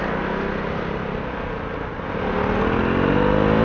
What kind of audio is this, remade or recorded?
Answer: recorded